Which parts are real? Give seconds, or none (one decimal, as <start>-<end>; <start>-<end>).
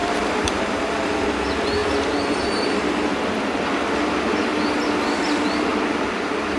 0.8-5.7